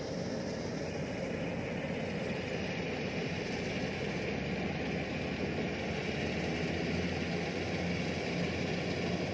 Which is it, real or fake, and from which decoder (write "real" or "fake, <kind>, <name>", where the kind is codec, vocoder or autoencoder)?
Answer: real